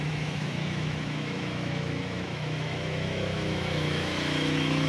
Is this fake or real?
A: fake